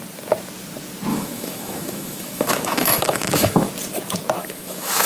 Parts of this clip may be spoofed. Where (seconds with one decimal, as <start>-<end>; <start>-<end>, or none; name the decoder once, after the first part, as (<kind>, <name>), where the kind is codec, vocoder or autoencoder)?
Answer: 1.1-3.7 (autoencoder, DAC-VAE); 4.4-5.1